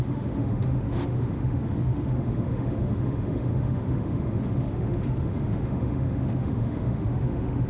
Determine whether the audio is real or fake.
fake